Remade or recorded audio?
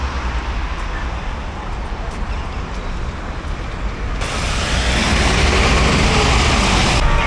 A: recorded